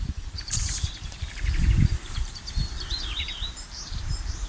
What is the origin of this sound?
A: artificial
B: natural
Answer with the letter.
A